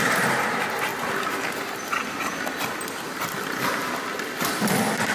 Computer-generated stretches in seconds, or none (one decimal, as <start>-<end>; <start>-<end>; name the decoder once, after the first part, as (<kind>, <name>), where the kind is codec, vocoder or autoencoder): none